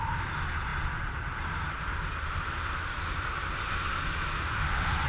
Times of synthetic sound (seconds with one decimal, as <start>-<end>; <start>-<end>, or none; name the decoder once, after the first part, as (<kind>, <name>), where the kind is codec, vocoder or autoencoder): none